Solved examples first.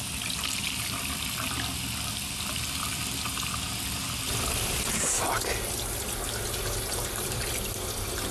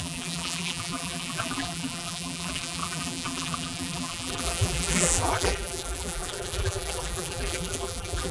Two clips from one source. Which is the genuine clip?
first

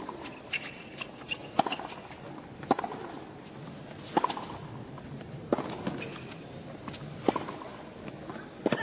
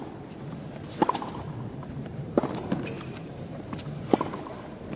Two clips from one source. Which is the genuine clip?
first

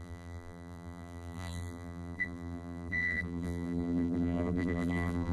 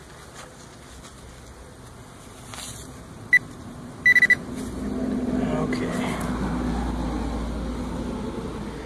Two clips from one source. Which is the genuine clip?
second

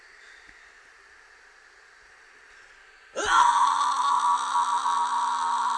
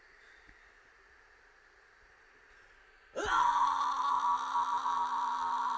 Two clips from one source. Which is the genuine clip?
first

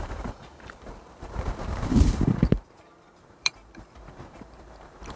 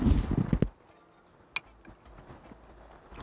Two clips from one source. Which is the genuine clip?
second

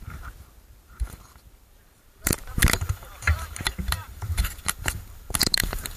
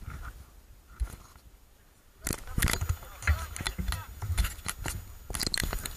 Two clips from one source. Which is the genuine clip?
second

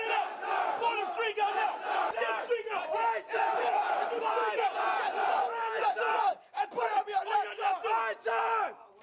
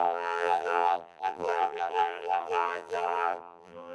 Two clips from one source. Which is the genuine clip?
first